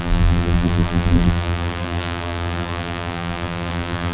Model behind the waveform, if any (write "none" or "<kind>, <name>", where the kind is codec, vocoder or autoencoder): vocoder, BigVGAN v2